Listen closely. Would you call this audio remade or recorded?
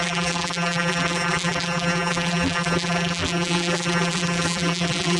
remade